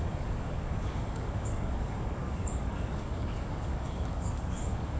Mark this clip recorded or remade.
remade